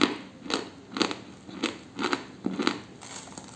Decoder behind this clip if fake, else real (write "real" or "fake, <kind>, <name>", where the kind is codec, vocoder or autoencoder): real